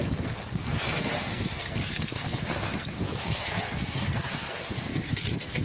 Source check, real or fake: fake